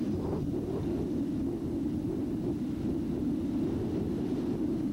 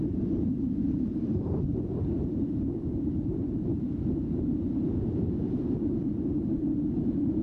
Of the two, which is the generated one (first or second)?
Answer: second